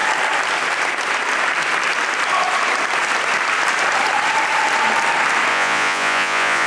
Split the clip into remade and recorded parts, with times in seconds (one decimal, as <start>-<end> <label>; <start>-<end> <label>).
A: 0.0-5.5 recorded; 5.5-6.7 remade